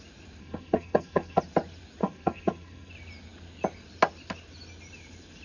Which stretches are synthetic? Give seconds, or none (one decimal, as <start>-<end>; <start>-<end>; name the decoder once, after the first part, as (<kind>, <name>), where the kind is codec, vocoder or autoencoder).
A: 0.4-1.4 (codec, SNAC); 2.0-2.9